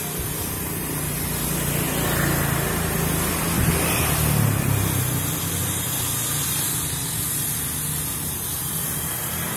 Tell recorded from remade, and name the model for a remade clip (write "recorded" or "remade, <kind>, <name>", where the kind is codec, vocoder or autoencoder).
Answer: recorded